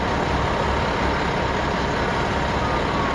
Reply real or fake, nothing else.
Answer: real